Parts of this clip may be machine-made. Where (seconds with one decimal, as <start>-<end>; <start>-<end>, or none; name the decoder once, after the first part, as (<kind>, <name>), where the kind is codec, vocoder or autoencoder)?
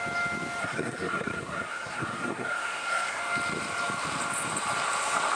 0.6-3.2 (codec, SNAC)